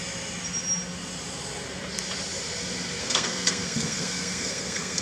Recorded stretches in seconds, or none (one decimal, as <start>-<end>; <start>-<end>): 0.0-3.0